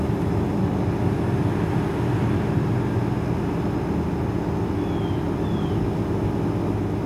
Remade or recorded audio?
recorded